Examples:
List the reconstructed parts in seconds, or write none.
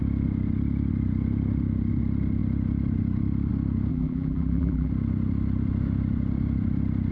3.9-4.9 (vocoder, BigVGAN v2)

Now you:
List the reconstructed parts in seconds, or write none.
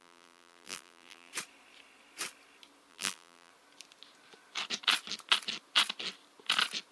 0.0-1.3 (vocoder, BigVGAN v2); 2.9-3.5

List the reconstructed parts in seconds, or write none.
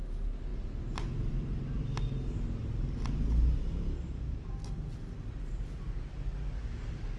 0.5-1.8 (vocoder, BigVGAN v2); 2.6-5.3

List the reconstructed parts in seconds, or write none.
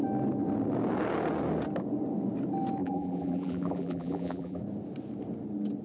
2.8-4.6 (vocoder, BigVGAN v2)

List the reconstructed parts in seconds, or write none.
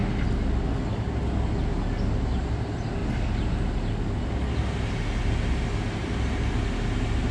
none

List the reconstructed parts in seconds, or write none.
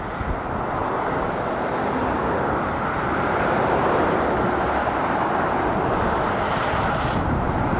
0.0-7.8 (vocoder, BigVGAN v2)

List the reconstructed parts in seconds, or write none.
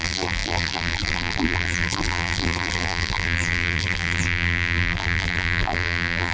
0.0-6.3 (vocoder, BigVGAN v2)